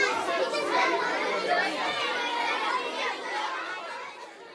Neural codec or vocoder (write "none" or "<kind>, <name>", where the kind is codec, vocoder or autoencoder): none